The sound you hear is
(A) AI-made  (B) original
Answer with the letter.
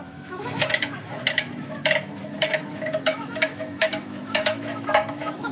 A